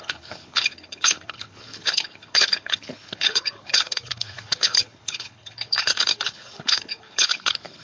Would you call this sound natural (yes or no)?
no